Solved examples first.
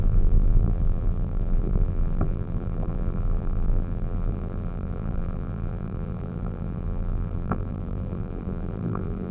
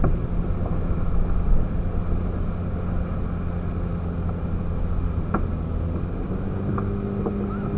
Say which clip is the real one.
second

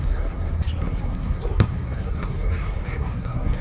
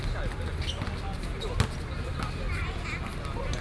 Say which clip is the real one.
second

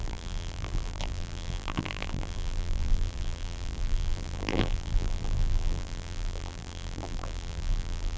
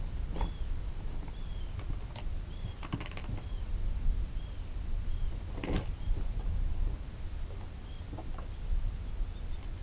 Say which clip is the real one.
second